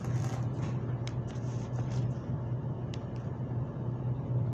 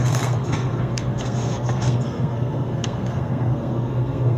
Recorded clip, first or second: first